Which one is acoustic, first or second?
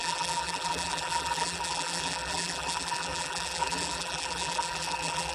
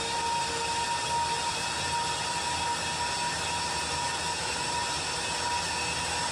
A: second